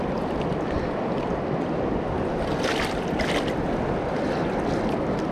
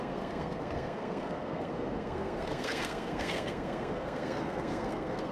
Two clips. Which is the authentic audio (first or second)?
first